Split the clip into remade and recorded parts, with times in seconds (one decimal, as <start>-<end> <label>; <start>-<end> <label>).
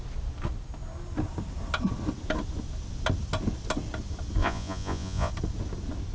0.0-4.4 recorded; 4.4-5.3 remade; 5.3-6.1 recorded